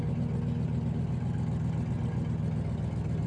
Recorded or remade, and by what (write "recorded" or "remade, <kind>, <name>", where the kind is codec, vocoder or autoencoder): recorded